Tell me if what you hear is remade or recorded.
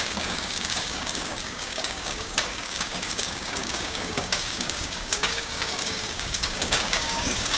remade